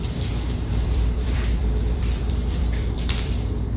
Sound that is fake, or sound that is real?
fake